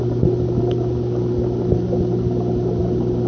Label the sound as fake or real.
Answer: real